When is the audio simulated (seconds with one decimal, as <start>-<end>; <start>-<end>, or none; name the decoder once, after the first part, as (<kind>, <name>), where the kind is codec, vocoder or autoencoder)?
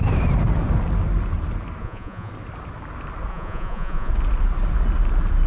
1.8-2.3 (vocoder, Vocos); 3.3-4.1